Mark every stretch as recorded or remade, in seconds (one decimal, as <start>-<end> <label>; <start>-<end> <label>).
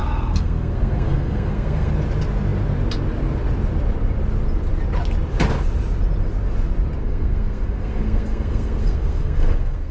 0.0-1.9 remade; 1.9-7.0 recorded; 7.0-9.9 remade